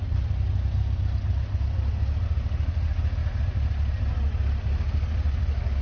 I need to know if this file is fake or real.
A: real